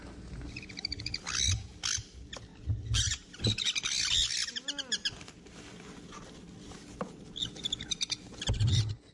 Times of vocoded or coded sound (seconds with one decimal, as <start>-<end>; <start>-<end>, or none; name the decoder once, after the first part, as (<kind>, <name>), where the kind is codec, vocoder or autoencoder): none